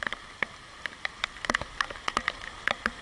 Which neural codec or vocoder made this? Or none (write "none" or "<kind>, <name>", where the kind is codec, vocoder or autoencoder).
vocoder, BigVGAN v2